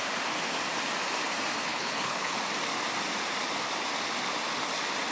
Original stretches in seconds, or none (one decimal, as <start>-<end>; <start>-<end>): 0.0-1.7; 2.4-5.1